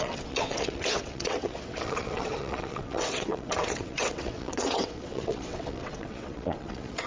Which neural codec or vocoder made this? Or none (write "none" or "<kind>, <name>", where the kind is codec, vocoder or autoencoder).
vocoder, WaveNeXt